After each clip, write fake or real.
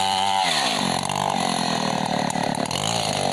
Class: fake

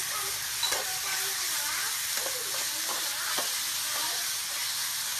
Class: real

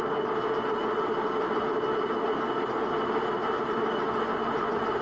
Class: real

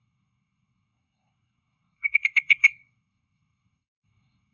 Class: fake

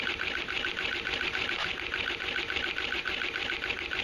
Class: real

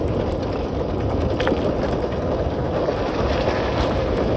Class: real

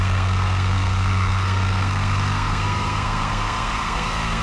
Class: fake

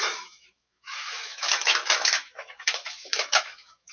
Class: fake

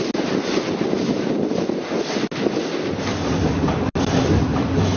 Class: real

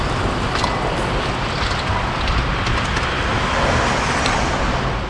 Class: real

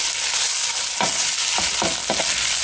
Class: real